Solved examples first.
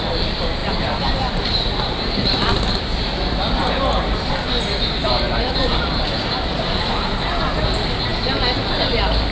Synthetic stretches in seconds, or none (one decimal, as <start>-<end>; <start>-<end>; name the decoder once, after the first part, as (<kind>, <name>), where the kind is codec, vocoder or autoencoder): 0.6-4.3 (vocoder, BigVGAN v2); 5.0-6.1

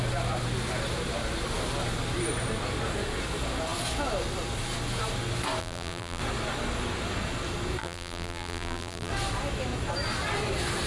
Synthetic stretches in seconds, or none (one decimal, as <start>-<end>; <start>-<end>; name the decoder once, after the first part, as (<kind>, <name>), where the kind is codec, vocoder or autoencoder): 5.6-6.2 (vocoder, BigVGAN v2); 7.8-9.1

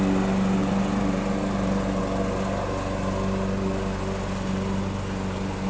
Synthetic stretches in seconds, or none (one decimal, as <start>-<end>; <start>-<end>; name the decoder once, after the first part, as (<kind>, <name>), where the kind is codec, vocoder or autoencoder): 0.6-2.0 (vocoder, BigVGAN v2)

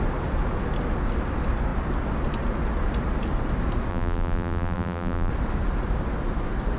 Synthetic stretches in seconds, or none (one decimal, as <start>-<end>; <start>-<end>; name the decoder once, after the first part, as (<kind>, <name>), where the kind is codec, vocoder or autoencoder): 3.9-5.3 (vocoder, BigVGAN v2)

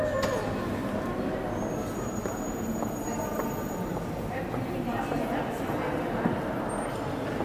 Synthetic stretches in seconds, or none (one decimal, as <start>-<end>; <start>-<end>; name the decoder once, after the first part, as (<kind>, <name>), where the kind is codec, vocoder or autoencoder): 1.8-5.8 (vocoder, BigVGAN v2)

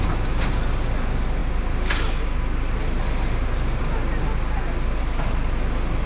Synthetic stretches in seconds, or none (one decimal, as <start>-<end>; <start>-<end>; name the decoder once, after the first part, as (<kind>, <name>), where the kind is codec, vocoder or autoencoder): none

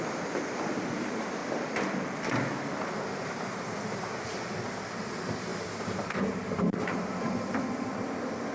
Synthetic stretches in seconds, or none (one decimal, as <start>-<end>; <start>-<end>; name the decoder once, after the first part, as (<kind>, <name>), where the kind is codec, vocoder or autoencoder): 5.5-7.6 (vocoder, BigVGAN v2)

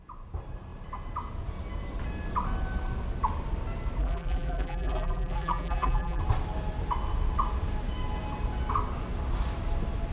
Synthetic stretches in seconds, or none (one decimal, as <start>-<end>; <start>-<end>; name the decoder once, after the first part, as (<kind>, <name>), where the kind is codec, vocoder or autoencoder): 4.0-6.2 (vocoder, BigVGAN v2)